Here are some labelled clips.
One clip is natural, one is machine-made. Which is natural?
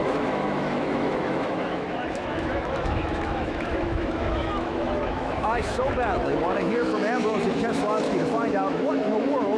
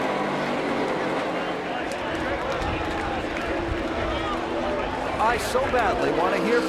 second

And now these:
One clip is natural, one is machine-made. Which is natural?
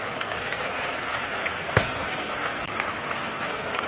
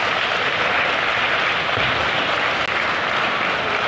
second